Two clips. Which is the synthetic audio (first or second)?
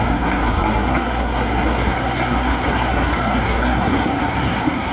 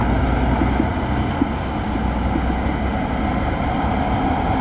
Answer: first